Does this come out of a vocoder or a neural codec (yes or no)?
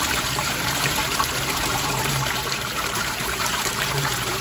yes